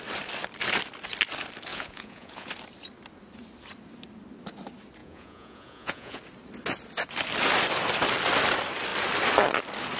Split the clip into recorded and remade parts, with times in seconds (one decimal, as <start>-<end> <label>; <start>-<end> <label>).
0.0-1.7 recorded; 1.7-2.5 remade; 2.5-5.0 recorded; 5.0-6.2 remade; 6.2-10.0 recorded